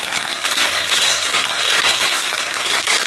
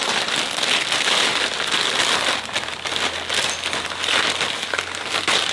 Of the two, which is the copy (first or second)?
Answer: first